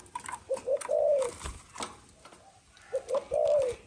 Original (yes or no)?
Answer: yes